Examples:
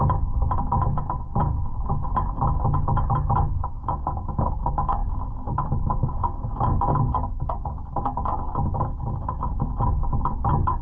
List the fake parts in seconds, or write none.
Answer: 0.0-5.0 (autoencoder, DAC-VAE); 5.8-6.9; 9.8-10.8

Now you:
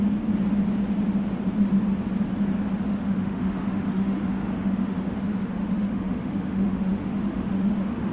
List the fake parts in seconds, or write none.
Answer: 2.9-8.1 (autoencoder, DAC-VAE)

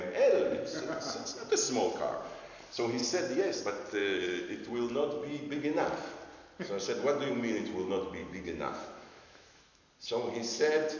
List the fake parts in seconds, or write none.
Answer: 8.2-9.8 (autoencoder, DAC-VAE)

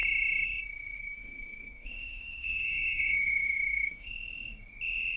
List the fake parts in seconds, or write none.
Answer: 1.0-4.1 (autoencoder, DAC-VAE)